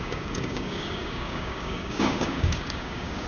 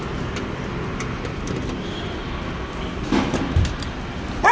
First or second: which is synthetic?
first